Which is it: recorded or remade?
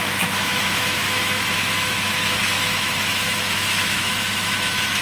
remade